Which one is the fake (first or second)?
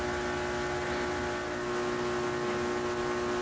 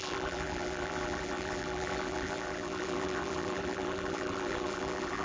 second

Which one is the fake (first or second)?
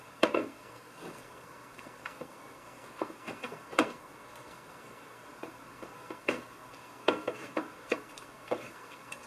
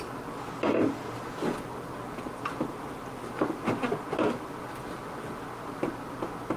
first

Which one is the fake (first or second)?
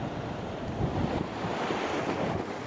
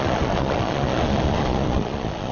second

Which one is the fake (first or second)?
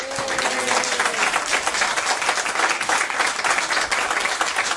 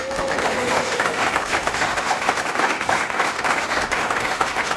second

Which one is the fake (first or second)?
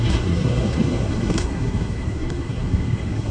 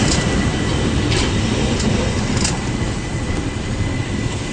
first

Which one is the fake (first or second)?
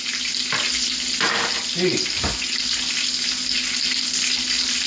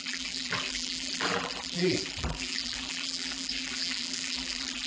second